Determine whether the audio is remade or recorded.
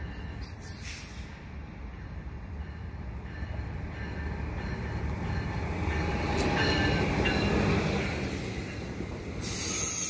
recorded